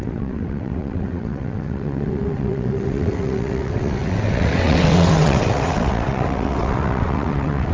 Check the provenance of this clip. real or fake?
fake